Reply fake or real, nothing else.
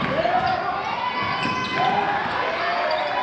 real